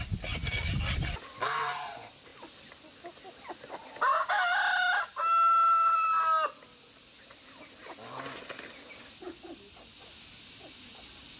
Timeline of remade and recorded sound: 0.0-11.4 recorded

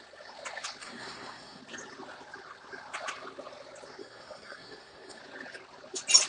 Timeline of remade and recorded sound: 0.0-0.8 recorded; 0.8-1.6 remade; 1.6-4.0 recorded; 4.0-5.2 remade; 5.2-6.3 recorded

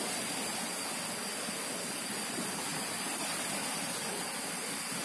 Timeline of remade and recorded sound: 0.0-5.0 recorded

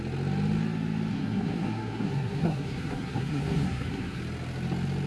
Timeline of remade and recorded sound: 0.0-1.1 recorded; 1.1-4.2 remade; 4.2-5.1 recorded

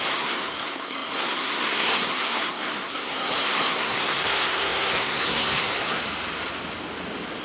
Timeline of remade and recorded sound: 0.0-6.0 remade; 6.0-7.4 recorded

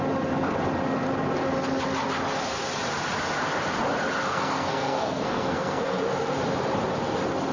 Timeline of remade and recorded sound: 0.0-4.3 recorded; 4.3-6.0 remade; 6.0-7.5 recorded